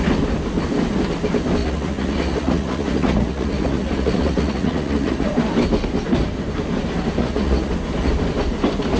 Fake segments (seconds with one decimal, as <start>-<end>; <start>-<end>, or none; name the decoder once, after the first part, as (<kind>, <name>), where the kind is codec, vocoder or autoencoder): 1.6-5.3 (vocoder, Vocos); 7.2-7.7